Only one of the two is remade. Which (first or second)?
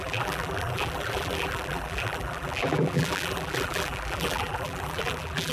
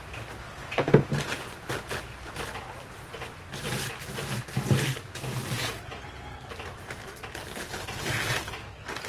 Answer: first